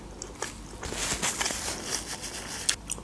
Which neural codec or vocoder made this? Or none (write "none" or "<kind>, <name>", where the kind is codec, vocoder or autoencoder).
none